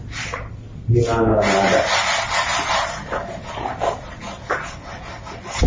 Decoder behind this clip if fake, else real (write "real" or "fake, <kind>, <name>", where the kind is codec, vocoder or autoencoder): real